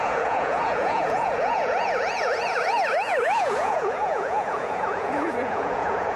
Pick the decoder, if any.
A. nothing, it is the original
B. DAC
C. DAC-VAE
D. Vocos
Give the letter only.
D